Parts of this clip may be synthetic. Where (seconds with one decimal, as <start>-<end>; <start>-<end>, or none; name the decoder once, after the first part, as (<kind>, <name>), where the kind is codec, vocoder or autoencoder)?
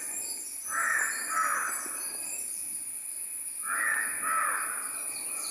none